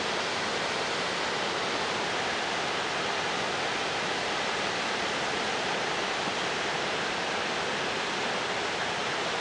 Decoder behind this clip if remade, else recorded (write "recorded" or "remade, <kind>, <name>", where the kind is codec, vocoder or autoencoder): recorded